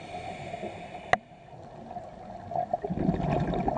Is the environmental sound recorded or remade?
recorded